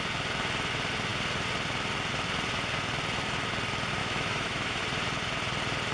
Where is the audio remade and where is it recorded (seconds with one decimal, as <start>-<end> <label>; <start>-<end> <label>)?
0.0-4.0 recorded; 4.0-4.8 remade; 4.8-5.9 recorded